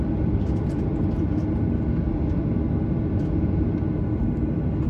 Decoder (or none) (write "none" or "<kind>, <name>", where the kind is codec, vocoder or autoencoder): none